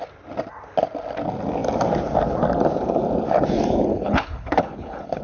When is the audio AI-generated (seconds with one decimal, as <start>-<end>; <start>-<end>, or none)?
3.9-5.2

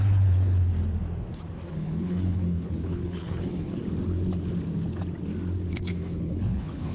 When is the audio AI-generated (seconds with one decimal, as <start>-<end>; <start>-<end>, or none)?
0.0-0.7; 1.7-3.8; 5.7-6.9

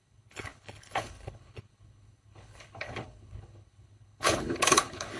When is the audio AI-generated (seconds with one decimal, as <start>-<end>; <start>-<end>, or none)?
0.0-5.2

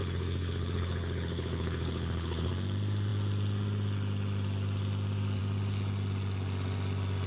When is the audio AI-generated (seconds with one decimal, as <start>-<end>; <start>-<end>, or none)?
0.0-2.5

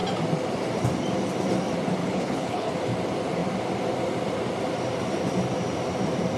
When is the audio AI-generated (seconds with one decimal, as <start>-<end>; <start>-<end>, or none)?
2.0-2.7

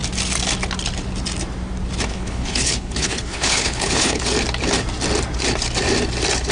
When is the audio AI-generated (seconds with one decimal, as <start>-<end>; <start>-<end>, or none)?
2.1-4.2